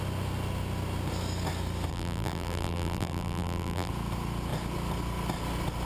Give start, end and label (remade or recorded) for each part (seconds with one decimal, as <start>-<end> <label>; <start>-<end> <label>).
0.0-1.9 recorded; 1.9-3.9 remade; 3.9-5.9 recorded